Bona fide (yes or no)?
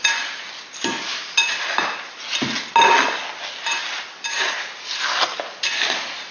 yes